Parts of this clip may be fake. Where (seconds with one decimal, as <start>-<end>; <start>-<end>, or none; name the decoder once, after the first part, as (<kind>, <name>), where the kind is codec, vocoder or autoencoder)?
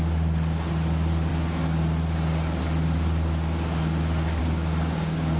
4.4-5.4 (codec, DAC)